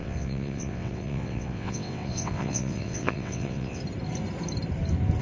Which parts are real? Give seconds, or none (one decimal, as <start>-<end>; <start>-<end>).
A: 3.8-5.2

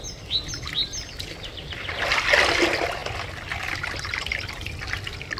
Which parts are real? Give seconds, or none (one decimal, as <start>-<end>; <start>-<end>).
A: 0.0-5.4